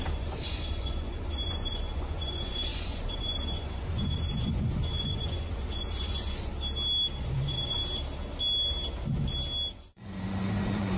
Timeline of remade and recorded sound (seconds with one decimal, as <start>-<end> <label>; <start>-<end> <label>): 0.0-6.5 remade; 6.5-7.2 recorded; 7.2-7.8 remade; 7.8-9.7 recorded; 9.7-11.0 remade